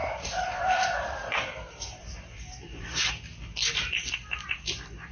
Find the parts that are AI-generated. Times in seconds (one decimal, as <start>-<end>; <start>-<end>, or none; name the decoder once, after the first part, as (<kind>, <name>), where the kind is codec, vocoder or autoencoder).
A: 0.0-3.1 (vocoder, BigVGAN v2); 3.6-4.6